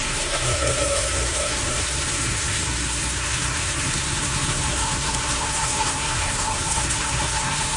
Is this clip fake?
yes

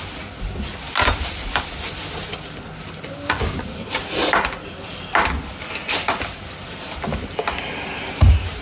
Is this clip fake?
no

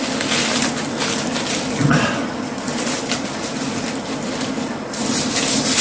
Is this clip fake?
no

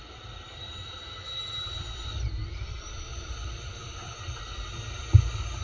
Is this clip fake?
yes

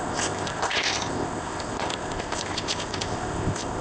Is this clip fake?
yes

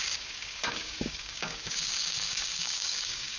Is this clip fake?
yes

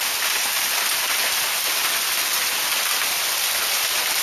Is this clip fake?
no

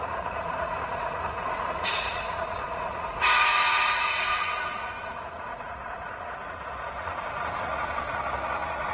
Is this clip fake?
yes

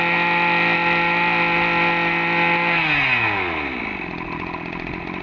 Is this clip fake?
no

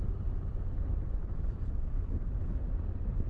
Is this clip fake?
no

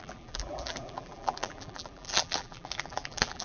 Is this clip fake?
yes